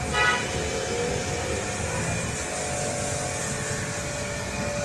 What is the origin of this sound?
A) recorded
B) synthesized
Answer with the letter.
A